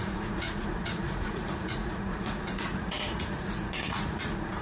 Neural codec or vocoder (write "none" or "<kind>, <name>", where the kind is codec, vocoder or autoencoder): vocoder, Vocos